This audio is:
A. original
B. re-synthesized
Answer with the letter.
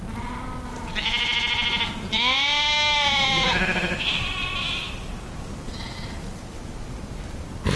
A